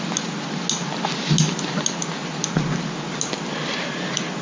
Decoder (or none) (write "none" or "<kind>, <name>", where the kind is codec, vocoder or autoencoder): none